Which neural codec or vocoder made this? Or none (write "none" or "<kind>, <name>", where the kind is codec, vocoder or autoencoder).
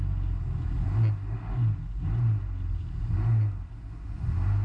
none